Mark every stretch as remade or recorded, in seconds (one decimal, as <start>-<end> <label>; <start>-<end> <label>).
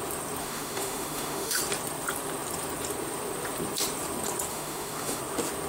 0.0-0.4 recorded; 0.4-1.6 remade; 1.6-4.5 recorded; 4.5-5.2 remade; 5.2-5.7 recorded